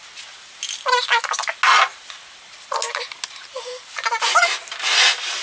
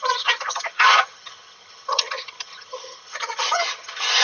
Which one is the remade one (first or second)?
second